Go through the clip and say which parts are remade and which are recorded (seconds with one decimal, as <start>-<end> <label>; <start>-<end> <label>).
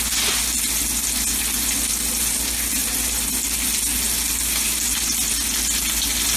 0.0-6.4 recorded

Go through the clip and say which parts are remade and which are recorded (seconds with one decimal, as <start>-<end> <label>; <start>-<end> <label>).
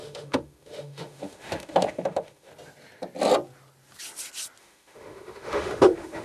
0.0-2.5 remade; 2.5-4.6 recorded; 4.6-6.2 remade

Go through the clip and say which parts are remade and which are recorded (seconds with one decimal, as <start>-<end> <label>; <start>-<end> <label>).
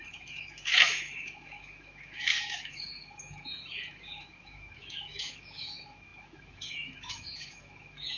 0.0-8.2 remade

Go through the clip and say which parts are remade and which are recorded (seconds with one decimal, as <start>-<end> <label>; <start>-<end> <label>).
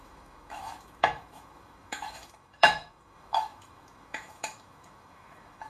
0.0-5.7 remade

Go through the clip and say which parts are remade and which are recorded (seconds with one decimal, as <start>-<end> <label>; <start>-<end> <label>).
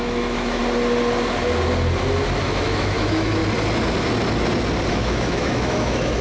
0.0-0.6 remade; 0.6-2.4 recorded; 2.4-3.4 remade; 3.4-4.9 recorded; 4.9-6.2 remade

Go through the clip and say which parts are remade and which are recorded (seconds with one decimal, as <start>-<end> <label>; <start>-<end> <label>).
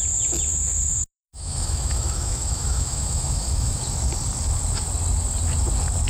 0.0-0.5 recorded; 0.5-3.8 remade; 3.8-6.1 recorded